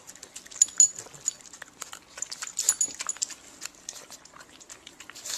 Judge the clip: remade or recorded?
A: recorded